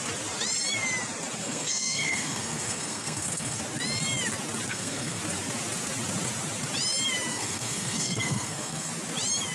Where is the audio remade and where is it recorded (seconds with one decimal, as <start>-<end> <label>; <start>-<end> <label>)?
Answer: 0.0-1.4 recorded; 1.4-3.6 remade; 3.6-4.7 recorded; 4.7-5.2 remade; 5.2-7.3 recorded; 7.3-8.9 remade; 8.9-9.5 recorded

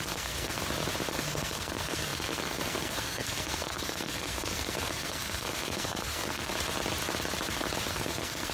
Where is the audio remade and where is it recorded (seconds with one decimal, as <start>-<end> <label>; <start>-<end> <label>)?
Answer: 0.0-0.6 remade; 0.6-1.1 recorded; 1.1-6.5 remade; 6.5-7.9 recorded; 7.9-8.5 remade

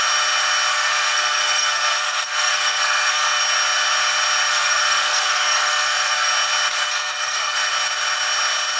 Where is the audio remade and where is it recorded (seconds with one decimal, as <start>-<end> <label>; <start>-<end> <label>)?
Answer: 0.0-0.7 recorded; 0.7-3.4 remade; 3.4-4.5 recorded; 4.5-6.3 remade; 6.3-6.8 recorded; 6.8-7.7 remade; 7.7-8.8 recorded

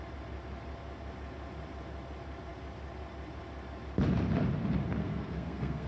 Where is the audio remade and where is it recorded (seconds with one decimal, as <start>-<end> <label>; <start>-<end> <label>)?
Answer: 0.0-5.0 recorded; 5.0-5.9 remade

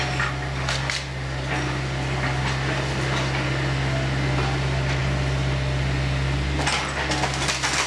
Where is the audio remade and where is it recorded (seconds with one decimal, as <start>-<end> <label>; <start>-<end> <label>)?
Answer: 0.0-7.9 recorded

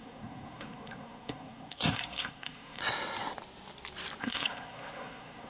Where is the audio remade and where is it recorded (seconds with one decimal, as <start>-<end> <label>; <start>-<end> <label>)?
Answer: 0.0-2.8 remade; 2.8-4.2 recorded; 4.2-5.5 remade

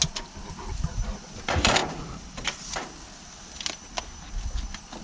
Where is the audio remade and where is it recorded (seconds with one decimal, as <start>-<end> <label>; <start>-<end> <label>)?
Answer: 0.0-5.0 recorded